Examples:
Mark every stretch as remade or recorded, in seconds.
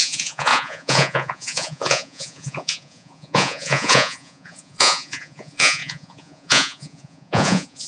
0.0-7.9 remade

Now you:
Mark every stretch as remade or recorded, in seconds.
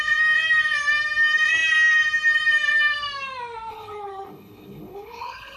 0.0-3.7 recorded; 3.7-5.6 remade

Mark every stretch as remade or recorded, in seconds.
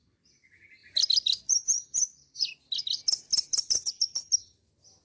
0.0-0.8 recorded; 0.8-2.5 remade; 2.5-3.3 recorded; 3.3-3.8 remade; 3.8-5.0 recorded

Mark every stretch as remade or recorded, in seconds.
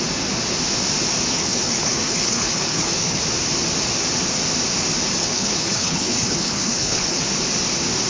0.0-1.3 recorded; 1.3-3.2 remade; 3.2-5.2 recorded; 5.2-7.2 remade; 7.2-8.1 recorded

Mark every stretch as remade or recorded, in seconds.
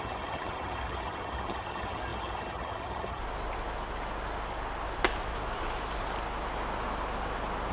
0.0-3.2 remade; 3.2-7.7 recorded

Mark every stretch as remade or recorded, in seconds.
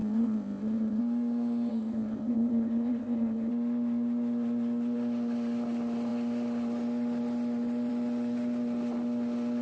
0.0-1.0 remade; 1.0-1.7 recorded; 1.7-3.5 remade; 3.5-9.6 recorded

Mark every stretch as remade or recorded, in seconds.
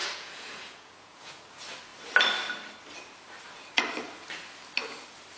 0.0-1.4 remade; 1.4-5.4 recorded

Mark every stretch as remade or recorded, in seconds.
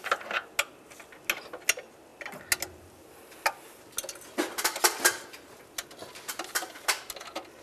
0.0-7.6 recorded